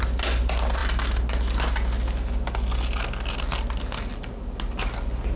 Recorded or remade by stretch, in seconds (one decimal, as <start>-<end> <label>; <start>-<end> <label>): 0.0-5.4 recorded